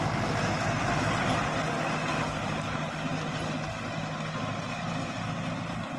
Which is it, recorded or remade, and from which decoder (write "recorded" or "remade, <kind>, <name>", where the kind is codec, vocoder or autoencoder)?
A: recorded